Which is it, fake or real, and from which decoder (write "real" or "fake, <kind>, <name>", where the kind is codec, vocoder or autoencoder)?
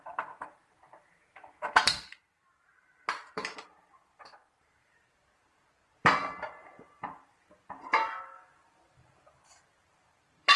fake, vocoder, BigVGAN v2